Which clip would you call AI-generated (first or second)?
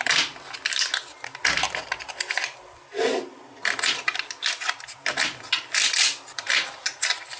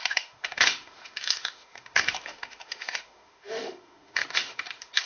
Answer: second